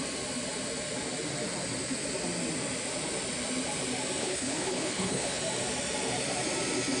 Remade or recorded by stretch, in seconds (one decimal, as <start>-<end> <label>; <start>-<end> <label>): 0.0-4.2 recorded; 4.2-5.4 remade; 5.4-7.0 recorded